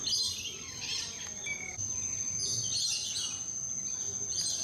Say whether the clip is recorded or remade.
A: recorded